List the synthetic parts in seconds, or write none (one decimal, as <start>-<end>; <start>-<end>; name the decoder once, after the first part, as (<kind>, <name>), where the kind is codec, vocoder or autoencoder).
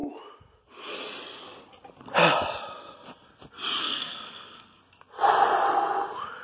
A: 3.8-4.8 (codec, SNAC)